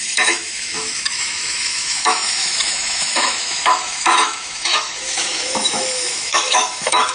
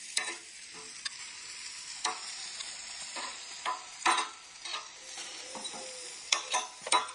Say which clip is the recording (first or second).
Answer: second